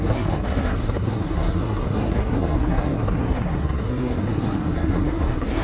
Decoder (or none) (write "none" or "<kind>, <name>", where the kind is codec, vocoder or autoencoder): codec, SNAC